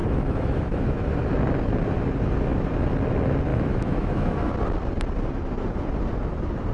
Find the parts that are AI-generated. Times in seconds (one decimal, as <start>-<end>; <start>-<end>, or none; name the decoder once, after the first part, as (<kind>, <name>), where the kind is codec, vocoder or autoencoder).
0.0-1.1 (autoencoder, DAC-VAE); 3.5-4.5